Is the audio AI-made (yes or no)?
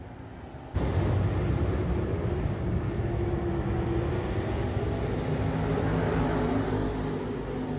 no